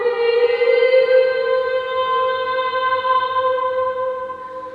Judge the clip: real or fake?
real